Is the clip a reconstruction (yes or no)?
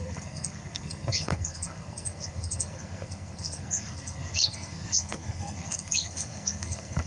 yes